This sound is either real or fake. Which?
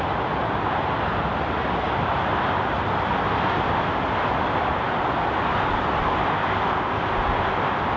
real